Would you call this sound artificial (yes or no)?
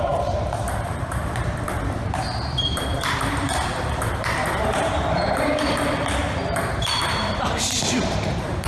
yes